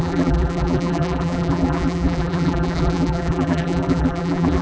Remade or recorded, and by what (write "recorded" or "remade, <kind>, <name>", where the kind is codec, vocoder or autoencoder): remade, vocoder, BigVGAN v2